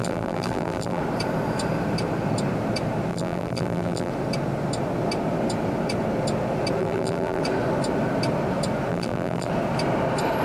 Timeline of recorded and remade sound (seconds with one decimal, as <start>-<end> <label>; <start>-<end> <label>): 0.0-1.0 remade; 1.0-3.1 recorded; 3.1-4.1 remade; 4.1-6.8 recorded; 6.8-7.4 remade; 7.4-8.9 recorded; 8.9-9.5 remade; 9.5-10.4 recorded